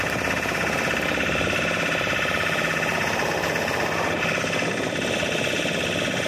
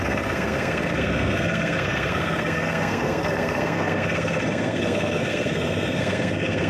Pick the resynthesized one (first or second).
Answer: second